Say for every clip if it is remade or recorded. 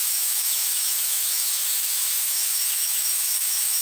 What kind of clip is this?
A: remade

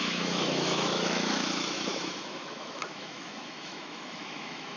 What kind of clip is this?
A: remade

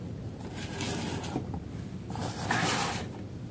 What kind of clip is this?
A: recorded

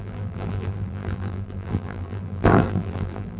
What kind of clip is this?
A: remade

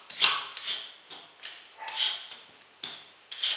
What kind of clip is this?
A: recorded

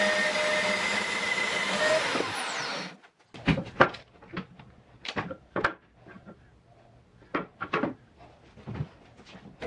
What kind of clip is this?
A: recorded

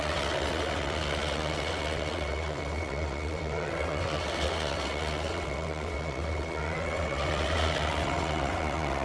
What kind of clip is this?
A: remade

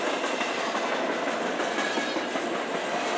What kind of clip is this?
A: recorded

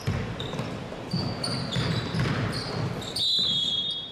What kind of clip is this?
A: remade